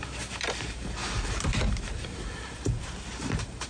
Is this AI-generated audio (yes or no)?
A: yes